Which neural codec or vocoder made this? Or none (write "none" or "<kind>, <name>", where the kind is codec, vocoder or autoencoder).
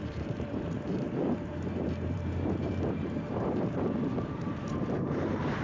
vocoder, BigVGAN v2